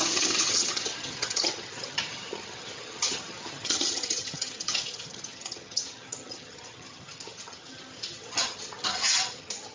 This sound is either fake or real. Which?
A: fake